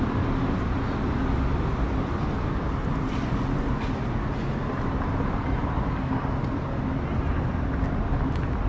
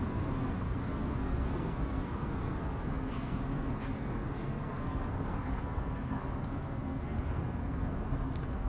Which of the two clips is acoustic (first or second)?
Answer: first